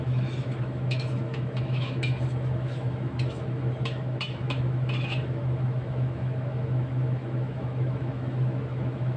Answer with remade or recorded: remade